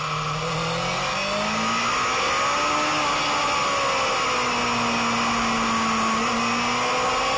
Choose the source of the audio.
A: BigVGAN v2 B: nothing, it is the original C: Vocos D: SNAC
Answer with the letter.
B